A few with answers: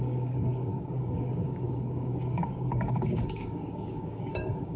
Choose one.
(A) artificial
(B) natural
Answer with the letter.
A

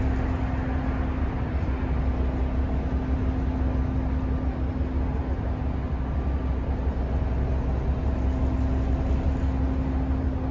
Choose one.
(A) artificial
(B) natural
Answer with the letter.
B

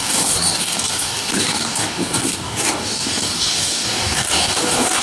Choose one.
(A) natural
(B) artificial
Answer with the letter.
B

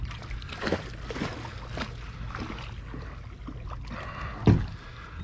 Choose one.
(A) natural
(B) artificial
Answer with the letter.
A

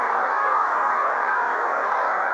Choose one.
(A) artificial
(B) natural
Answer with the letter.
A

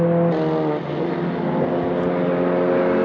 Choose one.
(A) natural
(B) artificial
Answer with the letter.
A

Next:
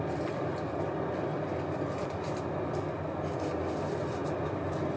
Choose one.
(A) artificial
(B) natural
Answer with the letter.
B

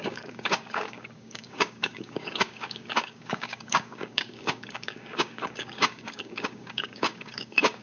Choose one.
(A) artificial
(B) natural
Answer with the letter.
A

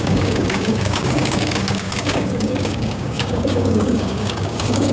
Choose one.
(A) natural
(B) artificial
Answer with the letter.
B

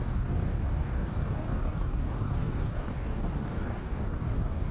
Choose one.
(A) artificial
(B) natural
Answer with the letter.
A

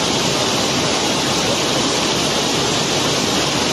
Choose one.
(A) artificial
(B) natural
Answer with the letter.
B